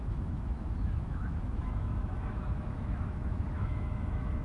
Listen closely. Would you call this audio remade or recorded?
remade